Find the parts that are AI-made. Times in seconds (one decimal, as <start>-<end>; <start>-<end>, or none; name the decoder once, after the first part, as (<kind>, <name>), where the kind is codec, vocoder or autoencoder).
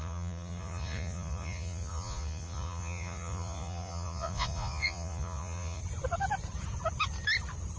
0.0-5.8 (vocoder, Vocos)